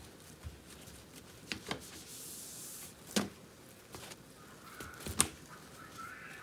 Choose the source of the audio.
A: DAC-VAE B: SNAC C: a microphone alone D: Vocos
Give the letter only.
C